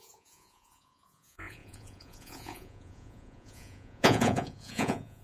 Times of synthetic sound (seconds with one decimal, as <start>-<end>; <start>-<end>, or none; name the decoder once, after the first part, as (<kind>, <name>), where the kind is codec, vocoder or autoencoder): 0.0-5.2 (vocoder, Vocos)